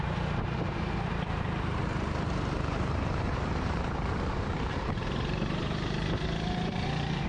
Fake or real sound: fake